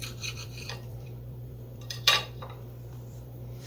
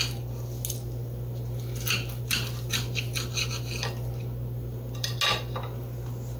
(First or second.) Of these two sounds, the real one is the second